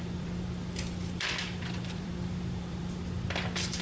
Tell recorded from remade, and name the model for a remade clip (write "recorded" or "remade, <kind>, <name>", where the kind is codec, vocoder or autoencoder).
remade, vocoder, BigVGAN v2